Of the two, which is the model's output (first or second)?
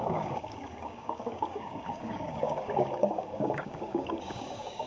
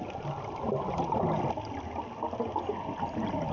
first